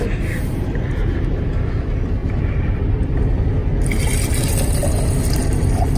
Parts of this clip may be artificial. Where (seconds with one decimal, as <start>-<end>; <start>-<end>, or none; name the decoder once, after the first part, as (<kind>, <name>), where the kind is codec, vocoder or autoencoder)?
0.0-2.2 (vocoder, BigVGAN v2); 3.0-3.6; 4.3-4.8; 5.4-6.0